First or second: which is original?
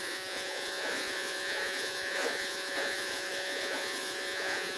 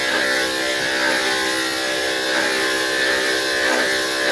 second